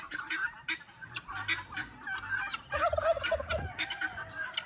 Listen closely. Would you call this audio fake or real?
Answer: real